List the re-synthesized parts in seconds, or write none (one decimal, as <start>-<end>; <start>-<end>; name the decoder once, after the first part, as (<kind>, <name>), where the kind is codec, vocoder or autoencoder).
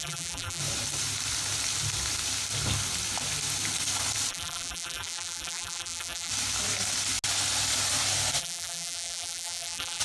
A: 0.0-0.6 (vocoder, BigVGAN v2); 4.3-6.3; 8.4-10.0